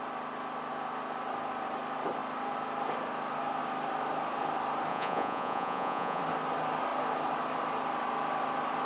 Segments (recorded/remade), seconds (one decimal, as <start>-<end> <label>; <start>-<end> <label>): 0.0-4.9 recorded; 4.9-6.2 remade; 6.2-8.8 recorded